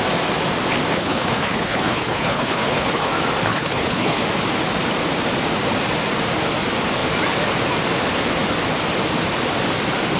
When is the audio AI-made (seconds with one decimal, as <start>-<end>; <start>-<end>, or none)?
0.9-3.1; 3.5-4.2

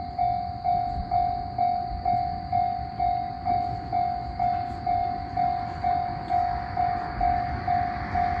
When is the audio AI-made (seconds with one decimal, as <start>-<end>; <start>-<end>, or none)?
none

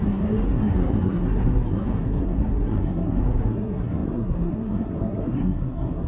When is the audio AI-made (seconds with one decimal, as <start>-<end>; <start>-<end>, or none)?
0.0-6.1